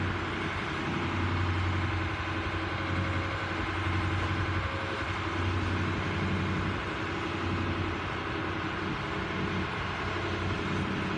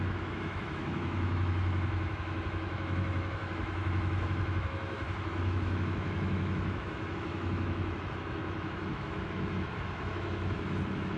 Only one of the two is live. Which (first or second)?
first